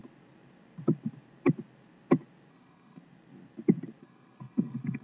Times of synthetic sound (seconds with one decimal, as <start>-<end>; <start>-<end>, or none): 2.5-3.0; 4.0-5.0